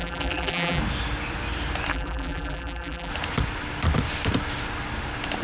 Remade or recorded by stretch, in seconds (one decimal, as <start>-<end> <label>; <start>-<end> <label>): 0.0-0.8 remade; 0.8-1.9 recorded; 1.9-3.1 remade; 3.1-5.4 recorded